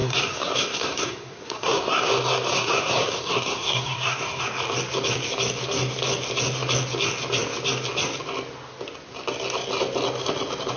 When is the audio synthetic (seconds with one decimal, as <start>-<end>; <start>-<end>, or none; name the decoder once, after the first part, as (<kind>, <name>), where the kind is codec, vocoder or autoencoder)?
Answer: 0.0-2.1 (codec, SNAC); 2.5-4.4